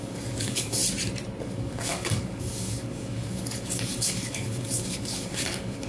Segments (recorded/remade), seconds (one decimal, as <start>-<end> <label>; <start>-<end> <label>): 0.0-0.8 remade; 0.8-1.4 recorded; 1.4-5.9 remade